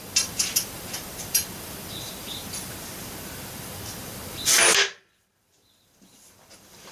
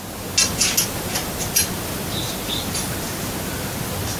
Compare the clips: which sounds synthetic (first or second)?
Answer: first